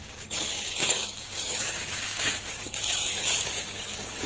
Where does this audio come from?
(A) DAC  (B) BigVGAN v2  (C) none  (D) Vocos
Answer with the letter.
A